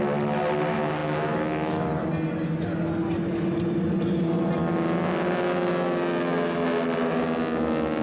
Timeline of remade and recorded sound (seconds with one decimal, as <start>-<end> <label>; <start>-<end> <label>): 0.0-8.0 recorded